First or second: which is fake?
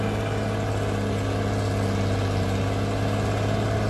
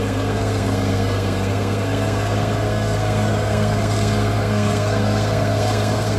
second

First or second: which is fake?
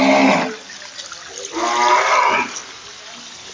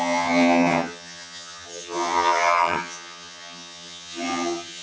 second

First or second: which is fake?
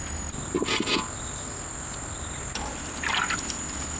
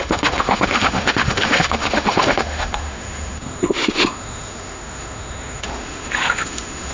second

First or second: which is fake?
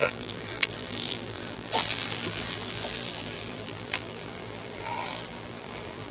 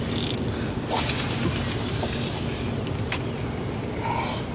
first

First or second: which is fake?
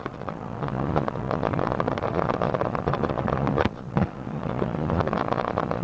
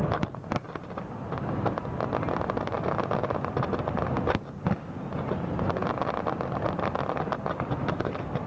first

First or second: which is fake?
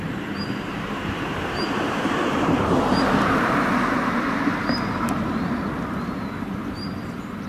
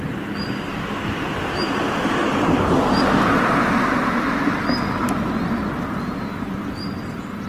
first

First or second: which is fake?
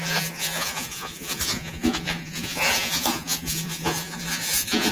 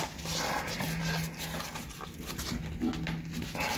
first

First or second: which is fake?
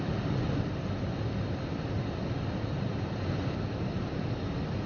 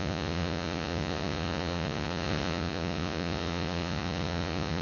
second